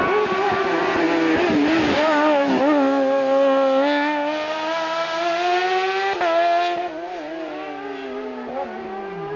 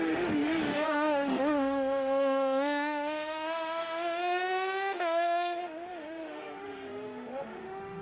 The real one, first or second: first